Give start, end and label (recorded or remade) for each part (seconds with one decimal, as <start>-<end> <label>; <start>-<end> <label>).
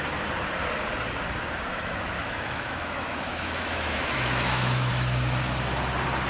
0.0-1.7 recorded; 1.7-4.9 remade; 4.9-6.3 recorded